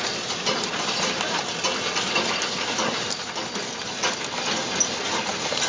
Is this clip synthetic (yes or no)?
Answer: no